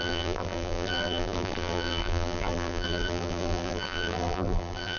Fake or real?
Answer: fake